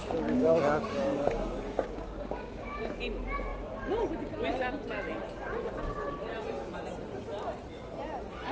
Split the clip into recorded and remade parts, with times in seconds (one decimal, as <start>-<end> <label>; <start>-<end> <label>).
0.0-2.9 remade; 2.9-8.5 recorded